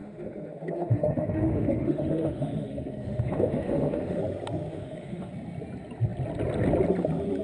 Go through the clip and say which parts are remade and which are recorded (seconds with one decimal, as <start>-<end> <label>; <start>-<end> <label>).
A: 0.0-4.2 remade; 4.2-4.7 recorded; 4.7-5.3 remade; 5.3-7.4 recorded